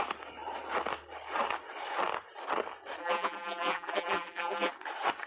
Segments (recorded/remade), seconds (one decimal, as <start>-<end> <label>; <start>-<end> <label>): 0.0-3.0 recorded; 3.0-4.7 remade; 4.7-5.3 recorded